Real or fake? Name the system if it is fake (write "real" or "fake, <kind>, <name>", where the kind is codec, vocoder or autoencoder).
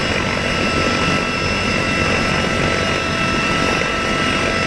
real